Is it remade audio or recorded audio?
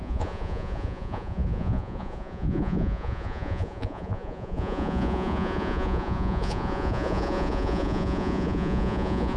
remade